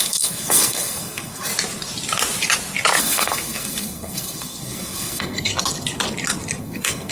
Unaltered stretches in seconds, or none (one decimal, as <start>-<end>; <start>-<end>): 1.5-3.0; 5.5-6.6

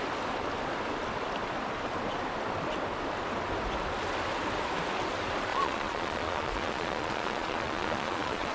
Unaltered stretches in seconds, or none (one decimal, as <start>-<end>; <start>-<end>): 0.0-5.5

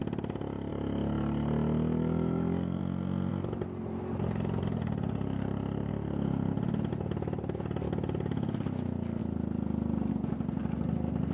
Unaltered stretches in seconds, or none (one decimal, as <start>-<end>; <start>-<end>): 0.0-1.9; 2.8-11.3

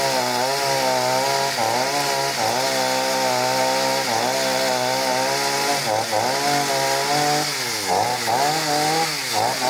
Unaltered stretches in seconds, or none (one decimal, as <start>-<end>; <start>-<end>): 0.0-9.7

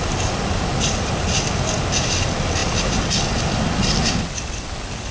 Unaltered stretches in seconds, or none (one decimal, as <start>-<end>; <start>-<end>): 0.0-5.1